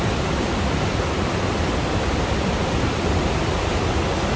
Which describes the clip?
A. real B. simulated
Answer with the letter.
A